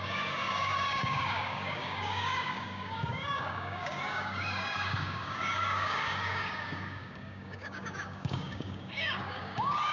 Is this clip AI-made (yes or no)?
yes